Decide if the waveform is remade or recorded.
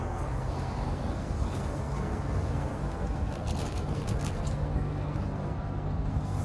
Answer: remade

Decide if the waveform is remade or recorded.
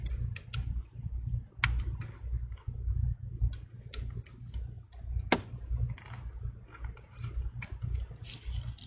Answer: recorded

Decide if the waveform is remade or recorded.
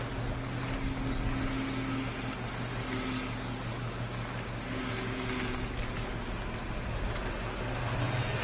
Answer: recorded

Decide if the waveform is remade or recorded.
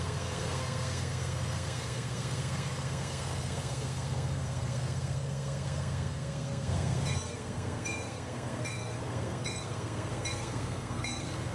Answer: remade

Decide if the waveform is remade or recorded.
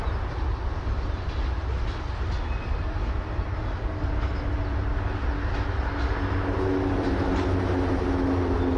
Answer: recorded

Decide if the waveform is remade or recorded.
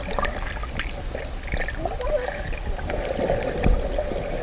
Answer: recorded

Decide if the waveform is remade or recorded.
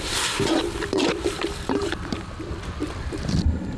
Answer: remade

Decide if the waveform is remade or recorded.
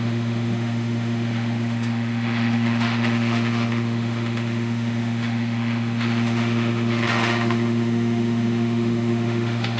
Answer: remade